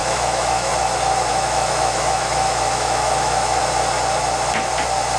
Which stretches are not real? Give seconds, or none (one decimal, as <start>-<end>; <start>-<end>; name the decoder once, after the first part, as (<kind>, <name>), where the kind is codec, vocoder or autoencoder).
0.0-0.7 (autoencoder, DAC-VAE); 1.3-3.6